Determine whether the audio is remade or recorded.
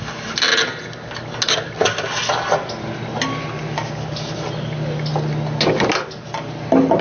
recorded